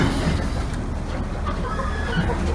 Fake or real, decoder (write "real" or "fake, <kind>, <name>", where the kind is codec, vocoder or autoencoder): real